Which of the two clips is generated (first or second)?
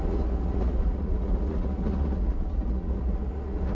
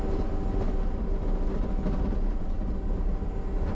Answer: first